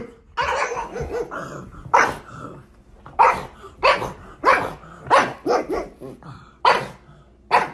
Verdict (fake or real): real